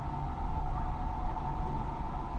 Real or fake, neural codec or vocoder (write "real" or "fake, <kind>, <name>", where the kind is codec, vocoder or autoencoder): real